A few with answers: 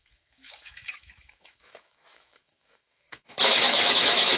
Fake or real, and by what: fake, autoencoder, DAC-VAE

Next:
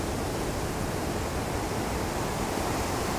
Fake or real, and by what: real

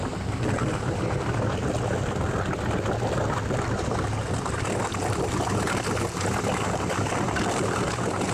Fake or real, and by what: real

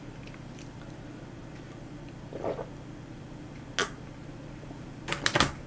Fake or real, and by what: real